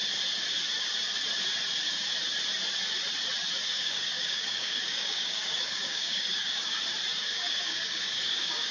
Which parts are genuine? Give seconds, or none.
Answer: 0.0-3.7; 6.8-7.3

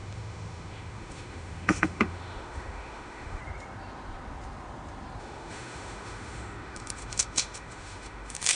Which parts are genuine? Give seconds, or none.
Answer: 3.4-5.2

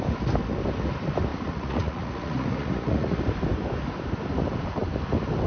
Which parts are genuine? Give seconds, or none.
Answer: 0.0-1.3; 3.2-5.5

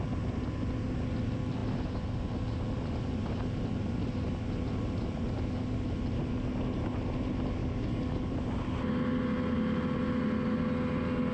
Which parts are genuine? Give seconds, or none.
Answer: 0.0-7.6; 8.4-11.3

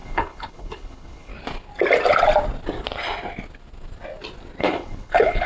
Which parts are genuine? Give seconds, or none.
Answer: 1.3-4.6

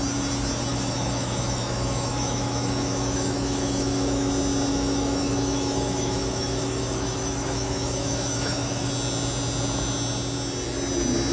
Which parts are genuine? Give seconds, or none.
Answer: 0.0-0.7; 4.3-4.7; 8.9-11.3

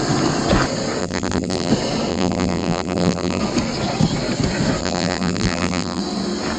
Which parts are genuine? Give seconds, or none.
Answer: 0.0-1.0; 1.7-2.1; 3.4-4.8; 6.0-6.6